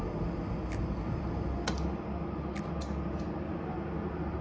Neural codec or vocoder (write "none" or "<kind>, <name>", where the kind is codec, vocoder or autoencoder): none